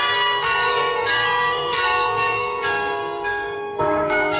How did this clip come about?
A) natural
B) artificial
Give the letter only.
B